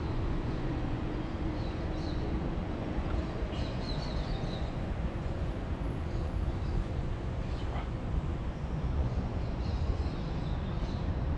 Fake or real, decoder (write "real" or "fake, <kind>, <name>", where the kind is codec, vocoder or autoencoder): fake, vocoder, Vocos